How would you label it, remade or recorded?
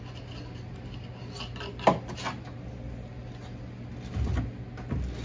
recorded